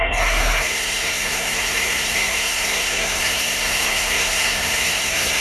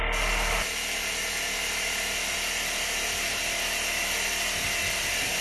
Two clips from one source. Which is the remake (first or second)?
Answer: first